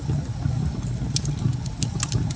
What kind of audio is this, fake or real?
real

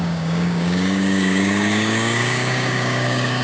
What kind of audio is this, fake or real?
fake